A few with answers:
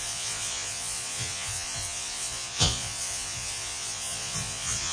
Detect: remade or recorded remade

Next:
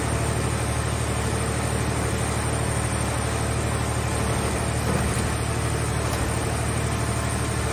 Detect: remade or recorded recorded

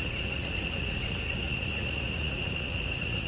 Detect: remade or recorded remade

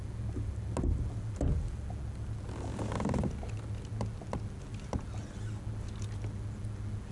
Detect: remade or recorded recorded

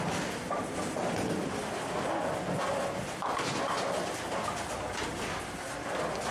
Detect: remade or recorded recorded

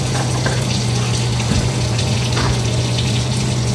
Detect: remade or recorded remade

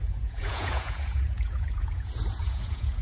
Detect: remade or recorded remade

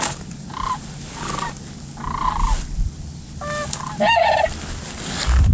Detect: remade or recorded recorded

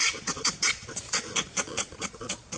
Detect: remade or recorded remade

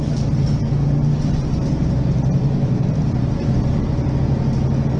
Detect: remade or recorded recorded